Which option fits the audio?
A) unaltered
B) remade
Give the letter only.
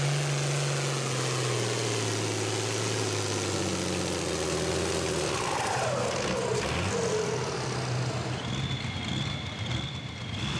A